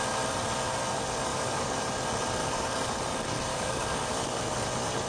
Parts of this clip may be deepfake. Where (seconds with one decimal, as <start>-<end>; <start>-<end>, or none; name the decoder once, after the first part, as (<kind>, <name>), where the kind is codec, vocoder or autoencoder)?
1.3-1.8 (codec, DAC); 2.4-3.0; 3.5-4.4